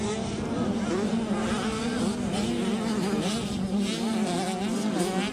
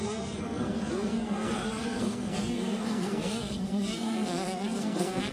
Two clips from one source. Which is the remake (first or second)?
second